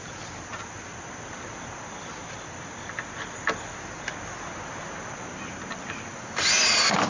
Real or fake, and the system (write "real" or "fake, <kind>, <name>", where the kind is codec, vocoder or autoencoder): real